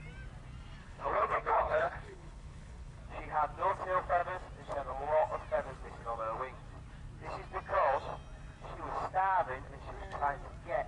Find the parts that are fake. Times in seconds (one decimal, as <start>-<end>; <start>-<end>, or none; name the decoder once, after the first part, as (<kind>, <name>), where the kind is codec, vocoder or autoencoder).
0.8-3.0 (codec, HILCodec)

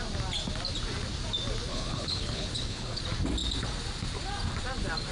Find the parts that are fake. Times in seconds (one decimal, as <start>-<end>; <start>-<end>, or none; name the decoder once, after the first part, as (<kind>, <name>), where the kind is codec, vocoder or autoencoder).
1.7-3.0 (codec, HILCodec)